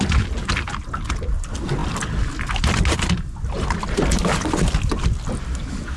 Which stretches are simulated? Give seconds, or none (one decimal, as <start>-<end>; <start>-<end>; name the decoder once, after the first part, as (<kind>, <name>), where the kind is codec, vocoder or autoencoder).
none